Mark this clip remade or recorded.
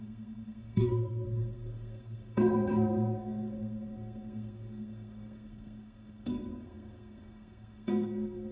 remade